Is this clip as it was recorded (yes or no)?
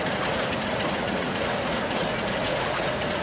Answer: no